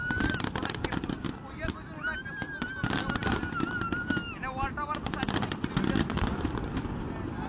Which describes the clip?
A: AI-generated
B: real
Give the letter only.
B